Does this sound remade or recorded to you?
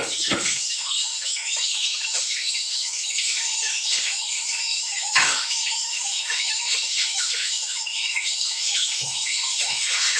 remade